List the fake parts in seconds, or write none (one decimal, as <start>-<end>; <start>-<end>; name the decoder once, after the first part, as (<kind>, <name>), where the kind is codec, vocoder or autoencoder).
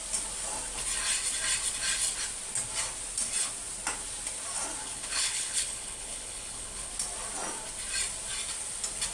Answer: 4.8-6.9 (codec, HILCodec)